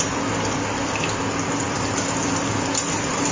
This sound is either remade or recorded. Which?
recorded